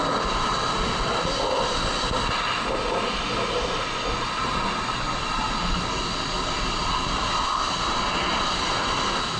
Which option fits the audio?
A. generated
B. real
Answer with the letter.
B